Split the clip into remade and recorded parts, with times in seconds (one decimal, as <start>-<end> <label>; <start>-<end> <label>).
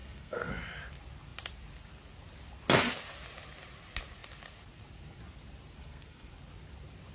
0.0-0.5 remade; 0.5-5.8 recorded; 5.8-6.3 remade; 6.3-7.1 recorded